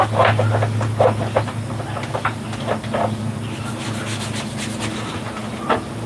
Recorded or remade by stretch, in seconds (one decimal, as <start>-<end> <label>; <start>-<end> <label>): 0.0-6.1 recorded